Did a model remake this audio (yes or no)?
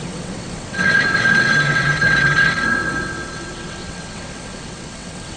yes